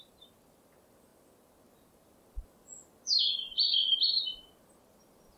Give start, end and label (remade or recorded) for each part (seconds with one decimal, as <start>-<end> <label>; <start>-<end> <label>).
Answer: 0.0-5.4 recorded